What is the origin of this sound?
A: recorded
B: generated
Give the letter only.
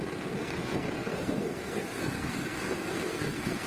B